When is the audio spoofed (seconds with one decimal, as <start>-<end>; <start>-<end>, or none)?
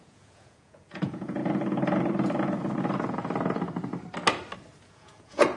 0.0-1.4; 4.8-5.6